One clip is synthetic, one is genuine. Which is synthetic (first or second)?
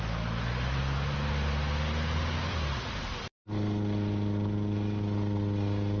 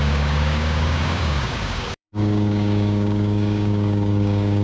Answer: second